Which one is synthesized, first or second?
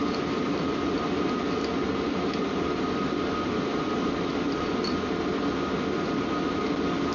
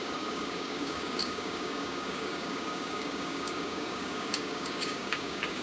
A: second